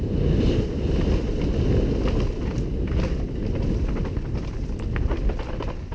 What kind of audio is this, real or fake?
real